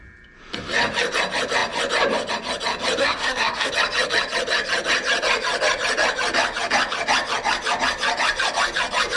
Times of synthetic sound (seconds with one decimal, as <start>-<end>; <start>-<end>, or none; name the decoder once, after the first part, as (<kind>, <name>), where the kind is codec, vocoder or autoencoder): 3.0-3.7 (codec, SNAC)